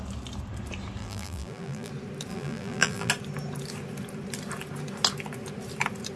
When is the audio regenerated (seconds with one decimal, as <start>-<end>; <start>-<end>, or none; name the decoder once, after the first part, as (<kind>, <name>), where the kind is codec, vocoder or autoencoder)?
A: 1.0-1.9 (vocoder, BigVGAN v2); 2.3-3.1